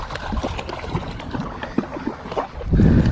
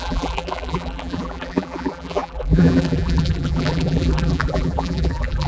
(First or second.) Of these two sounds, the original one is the first